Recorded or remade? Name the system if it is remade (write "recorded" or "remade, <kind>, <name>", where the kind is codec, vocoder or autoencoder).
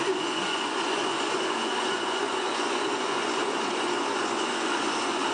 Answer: remade, vocoder, Vocos